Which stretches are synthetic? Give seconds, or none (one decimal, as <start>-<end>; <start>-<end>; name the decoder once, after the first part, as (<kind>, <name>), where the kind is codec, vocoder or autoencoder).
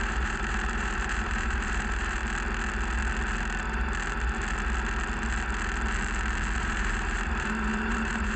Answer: 0.0-2.2 (vocoder, BigVGAN v2); 6.6-8.4